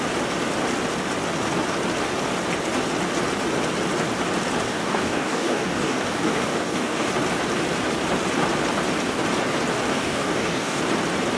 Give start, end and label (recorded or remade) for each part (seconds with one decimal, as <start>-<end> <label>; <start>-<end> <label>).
0.0-4.7 recorded; 4.7-7.1 remade; 7.1-9.9 recorded; 9.9-10.8 remade; 10.8-11.4 recorded